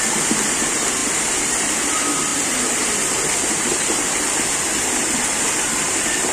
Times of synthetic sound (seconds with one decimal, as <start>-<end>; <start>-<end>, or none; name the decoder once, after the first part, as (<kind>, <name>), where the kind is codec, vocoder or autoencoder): 1.0-1.8 (vocoder, BigVGAN v2); 2.3-5.4